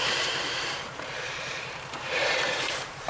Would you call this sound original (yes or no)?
no